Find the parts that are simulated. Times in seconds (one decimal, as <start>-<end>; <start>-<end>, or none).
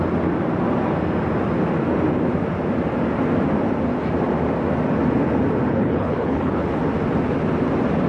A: 5.7-6.8